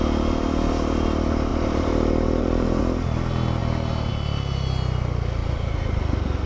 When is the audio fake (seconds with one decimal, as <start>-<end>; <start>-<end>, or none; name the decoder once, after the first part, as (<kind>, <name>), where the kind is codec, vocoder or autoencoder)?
1.5-2.8 (vocoder, BigVGAN v2); 5.4-6.0